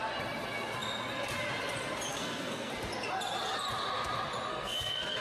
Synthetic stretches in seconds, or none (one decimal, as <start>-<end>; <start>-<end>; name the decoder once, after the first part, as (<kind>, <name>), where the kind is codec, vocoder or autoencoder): 2.1-2.7 (codec, SNAC); 4.5-5.2